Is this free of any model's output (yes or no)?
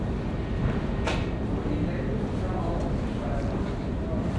yes